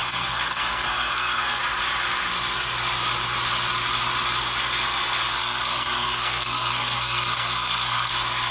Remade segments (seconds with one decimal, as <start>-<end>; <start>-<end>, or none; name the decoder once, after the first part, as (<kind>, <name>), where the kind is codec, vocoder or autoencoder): 0.0-1.6 (codec, SNAC); 5.4-8.1